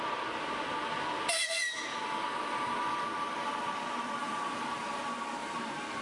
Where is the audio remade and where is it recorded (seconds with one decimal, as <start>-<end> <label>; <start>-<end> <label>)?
0.0-1.9 recorded; 1.9-2.9 remade; 2.9-4.2 recorded; 4.2-5.0 remade; 5.0-5.4 recorded; 5.4-6.0 remade